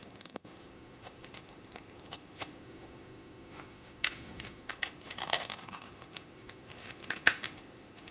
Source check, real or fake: fake